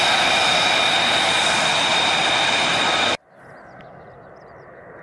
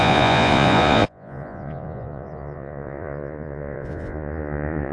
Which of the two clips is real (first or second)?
first